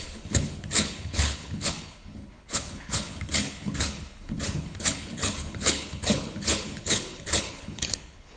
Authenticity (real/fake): fake